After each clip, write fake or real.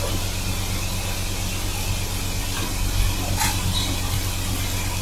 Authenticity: real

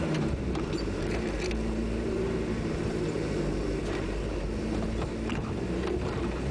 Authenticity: fake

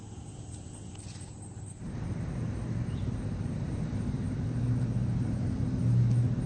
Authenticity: fake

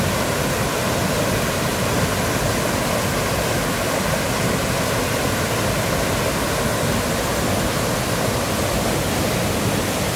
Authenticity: real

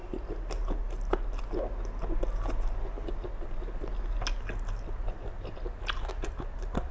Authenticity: real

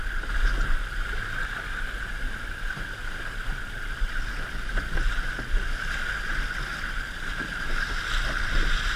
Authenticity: real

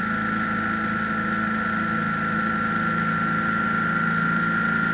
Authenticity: real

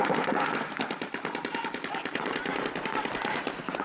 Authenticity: fake